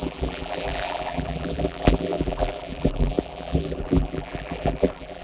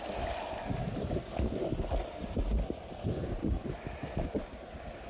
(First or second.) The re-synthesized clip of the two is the first